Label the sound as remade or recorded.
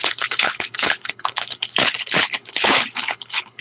remade